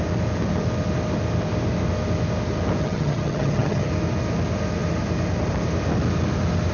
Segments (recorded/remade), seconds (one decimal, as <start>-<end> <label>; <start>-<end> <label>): 0.0-2.8 recorded; 2.8-3.9 remade; 3.9-6.7 recorded